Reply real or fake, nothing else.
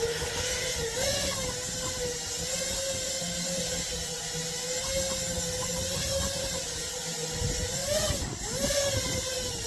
real